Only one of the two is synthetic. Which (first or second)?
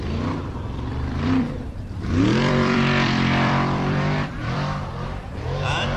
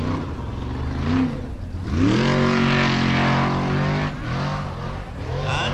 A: first